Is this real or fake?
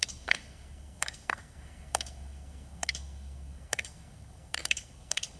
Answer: fake